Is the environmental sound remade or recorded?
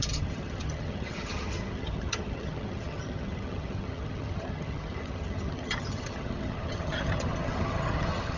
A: remade